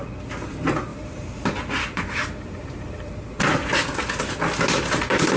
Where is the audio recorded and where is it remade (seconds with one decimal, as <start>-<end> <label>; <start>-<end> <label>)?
0.0-0.9 recorded; 0.9-3.3 remade; 3.3-5.4 recorded